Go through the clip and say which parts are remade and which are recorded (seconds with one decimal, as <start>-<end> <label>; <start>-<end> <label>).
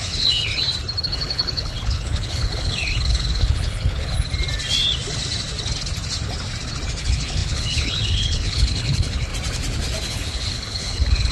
0.0-0.5 remade; 0.5-1.0 recorded; 1.0-4.1 remade; 4.1-7.0 recorded; 7.0-9.3 remade; 9.3-10.1 recorded; 10.1-11.3 remade